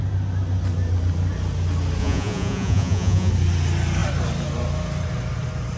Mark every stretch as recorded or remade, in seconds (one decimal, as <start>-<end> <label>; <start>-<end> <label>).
0.0-2.0 recorded; 2.0-3.3 remade; 3.3-5.8 recorded